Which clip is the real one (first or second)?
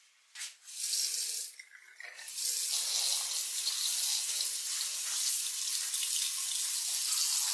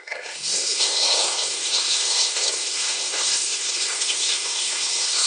first